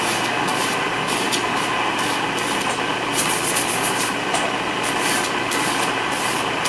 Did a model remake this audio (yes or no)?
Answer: no